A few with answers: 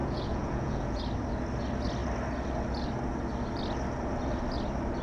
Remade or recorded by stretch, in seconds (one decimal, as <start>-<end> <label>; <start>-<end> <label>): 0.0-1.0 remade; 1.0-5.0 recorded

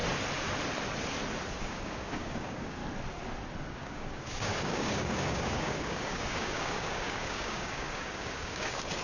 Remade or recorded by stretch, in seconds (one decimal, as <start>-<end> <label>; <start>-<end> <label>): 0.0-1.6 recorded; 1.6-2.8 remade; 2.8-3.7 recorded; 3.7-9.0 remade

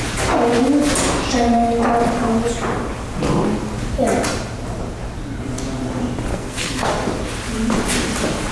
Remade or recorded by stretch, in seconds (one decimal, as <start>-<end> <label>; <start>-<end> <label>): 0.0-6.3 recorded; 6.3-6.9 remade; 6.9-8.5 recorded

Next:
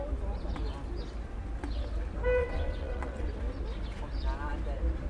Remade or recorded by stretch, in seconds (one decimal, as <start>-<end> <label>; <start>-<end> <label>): 0.0-2.4 recorded; 2.4-3.3 remade; 3.3-5.1 recorded

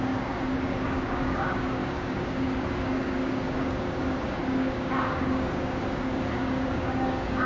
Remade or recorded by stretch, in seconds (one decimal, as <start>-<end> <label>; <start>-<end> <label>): 0.0-7.5 remade

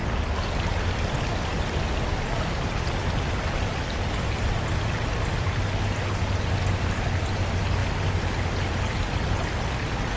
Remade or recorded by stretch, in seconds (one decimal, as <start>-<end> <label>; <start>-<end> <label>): 0.0-10.2 recorded

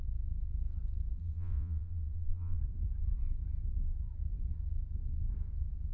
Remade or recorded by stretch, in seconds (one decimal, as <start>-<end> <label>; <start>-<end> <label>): 0.0-1.2 recorded; 1.2-2.6 remade; 2.6-5.9 recorded